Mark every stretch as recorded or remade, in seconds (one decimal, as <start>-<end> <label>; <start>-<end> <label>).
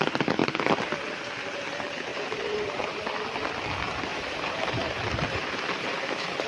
0.0-0.4 recorded; 0.4-1.4 remade; 1.4-2.1 recorded; 2.1-3.3 remade; 3.3-4.1 recorded; 4.1-6.5 remade